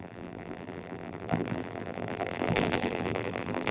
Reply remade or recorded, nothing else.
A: remade